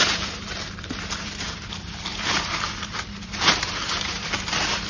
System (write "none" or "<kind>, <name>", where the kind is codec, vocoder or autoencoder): vocoder, BigVGAN v2